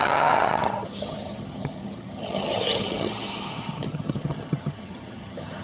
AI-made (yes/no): yes